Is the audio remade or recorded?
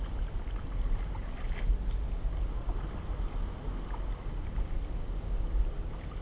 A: recorded